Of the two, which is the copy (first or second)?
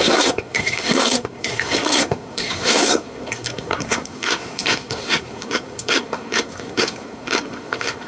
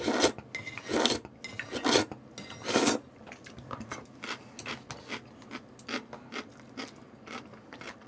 first